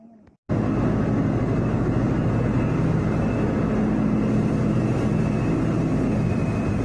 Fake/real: real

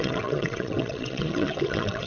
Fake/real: fake